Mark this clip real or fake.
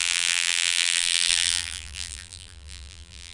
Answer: fake